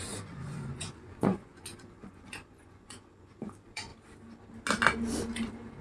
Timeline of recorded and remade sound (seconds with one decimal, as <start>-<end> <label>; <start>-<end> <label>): 0.0-3.9 remade; 3.9-5.8 recorded